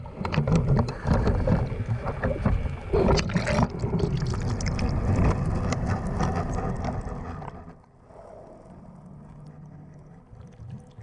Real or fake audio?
real